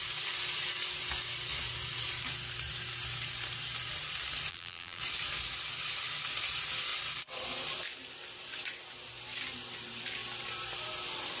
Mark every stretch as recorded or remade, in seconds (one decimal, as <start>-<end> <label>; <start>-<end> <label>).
0.0-4.5 recorded; 4.5-5.0 remade; 5.0-11.4 recorded